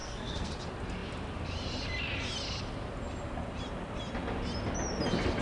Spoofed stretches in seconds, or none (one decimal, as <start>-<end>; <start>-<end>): 0.0-0.5